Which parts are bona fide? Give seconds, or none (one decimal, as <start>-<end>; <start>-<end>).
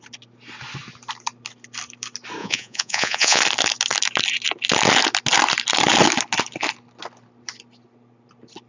0.0-2.4; 3.4-8.7